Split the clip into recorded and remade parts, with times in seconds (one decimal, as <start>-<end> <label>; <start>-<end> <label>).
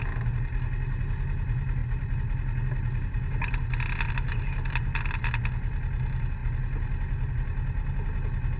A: 0.0-8.6 recorded